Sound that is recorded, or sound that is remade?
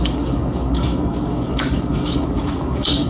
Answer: remade